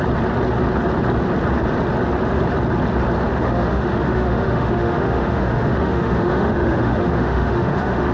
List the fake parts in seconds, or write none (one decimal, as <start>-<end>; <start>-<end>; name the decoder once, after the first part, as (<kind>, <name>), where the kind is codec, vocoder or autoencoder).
3.3-8.1 (autoencoder, DAC-VAE)